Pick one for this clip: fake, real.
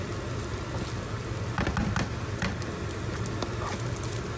real